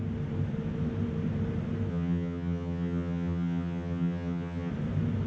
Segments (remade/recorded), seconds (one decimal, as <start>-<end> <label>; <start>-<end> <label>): 0.0-1.9 recorded; 1.9-4.7 remade; 4.7-5.3 recorded